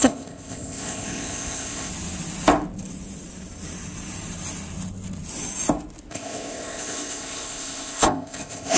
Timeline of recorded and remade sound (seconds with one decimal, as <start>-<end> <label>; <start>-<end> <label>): 0.0-1.9 remade; 1.9-6.1 recorded; 6.1-8.8 remade